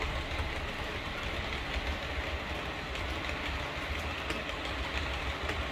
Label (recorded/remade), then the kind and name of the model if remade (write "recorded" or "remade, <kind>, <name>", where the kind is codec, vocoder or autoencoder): recorded